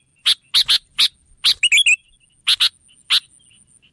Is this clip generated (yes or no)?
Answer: no